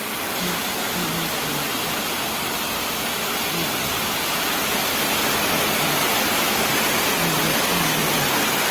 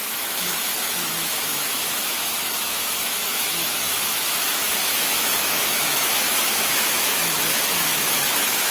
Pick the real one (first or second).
first